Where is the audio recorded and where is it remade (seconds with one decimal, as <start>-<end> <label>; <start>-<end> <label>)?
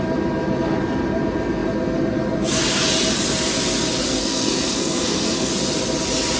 0.0-4.1 recorded; 4.1-5.5 remade; 5.5-6.4 recorded